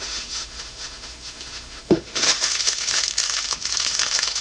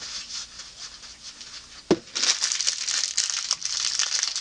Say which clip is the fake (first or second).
first